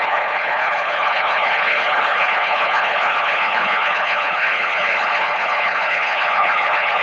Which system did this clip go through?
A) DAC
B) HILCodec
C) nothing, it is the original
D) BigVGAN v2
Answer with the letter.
B